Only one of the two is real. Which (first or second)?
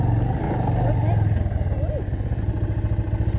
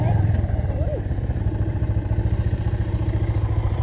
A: first